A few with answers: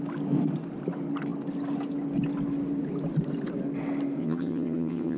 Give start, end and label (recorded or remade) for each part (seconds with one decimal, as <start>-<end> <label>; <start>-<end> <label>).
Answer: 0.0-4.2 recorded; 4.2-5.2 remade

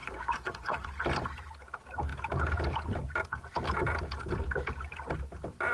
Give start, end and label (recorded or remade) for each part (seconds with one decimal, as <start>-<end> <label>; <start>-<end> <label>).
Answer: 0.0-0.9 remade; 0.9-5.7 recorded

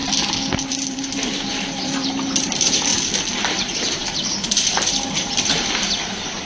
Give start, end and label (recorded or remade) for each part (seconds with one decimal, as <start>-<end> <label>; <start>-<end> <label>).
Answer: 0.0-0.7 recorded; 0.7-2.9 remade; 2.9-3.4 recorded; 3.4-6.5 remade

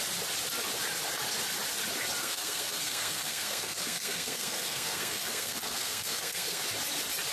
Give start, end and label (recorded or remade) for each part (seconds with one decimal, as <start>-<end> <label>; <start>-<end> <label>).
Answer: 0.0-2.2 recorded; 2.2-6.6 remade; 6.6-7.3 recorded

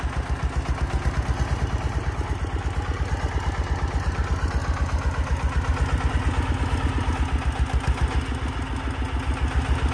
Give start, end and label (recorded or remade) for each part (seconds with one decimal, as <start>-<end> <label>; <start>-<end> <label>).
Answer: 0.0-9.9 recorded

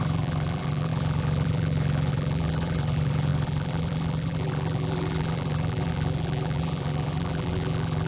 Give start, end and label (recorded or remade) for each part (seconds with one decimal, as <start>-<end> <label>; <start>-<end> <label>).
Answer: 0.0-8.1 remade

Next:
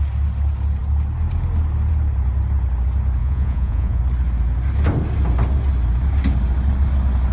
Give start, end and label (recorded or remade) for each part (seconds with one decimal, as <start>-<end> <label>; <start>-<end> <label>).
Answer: 0.0-3.2 recorded; 3.2-4.0 remade; 4.0-7.3 recorded

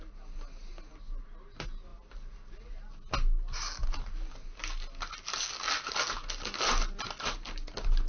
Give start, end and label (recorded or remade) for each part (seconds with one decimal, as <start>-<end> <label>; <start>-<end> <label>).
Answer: 0.0-8.1 recorded